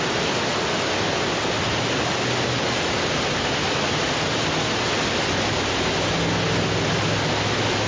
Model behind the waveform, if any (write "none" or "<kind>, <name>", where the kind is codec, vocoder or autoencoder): none